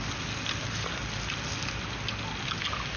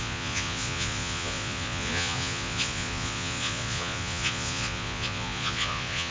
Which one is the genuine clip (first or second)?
first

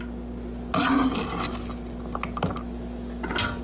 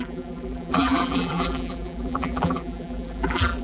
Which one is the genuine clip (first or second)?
first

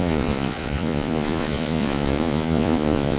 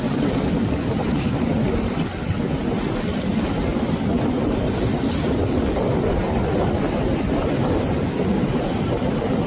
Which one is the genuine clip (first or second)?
second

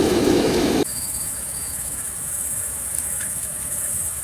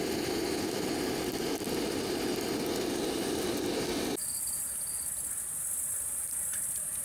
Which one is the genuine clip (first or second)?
second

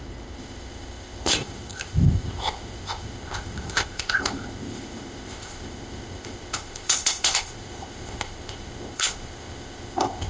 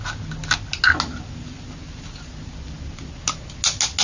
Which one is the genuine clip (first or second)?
second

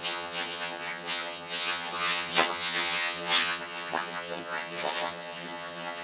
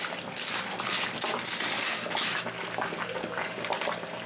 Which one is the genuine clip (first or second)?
second